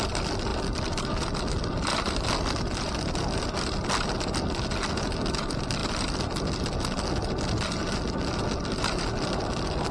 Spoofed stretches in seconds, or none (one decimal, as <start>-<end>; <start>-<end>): none